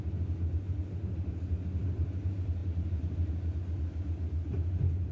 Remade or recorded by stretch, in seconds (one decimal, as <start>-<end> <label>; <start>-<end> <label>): 0.0-2.6 recorded; 2.6-3.6 remade; 3.6-5.1 recorded